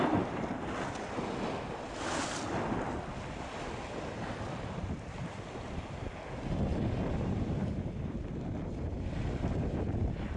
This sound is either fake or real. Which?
real